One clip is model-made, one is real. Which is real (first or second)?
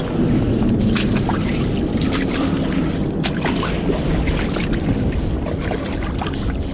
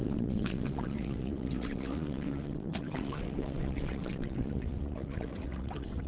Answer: first